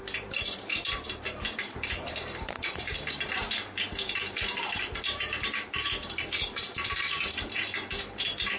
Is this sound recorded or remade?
remade